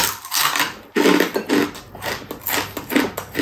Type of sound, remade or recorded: recorded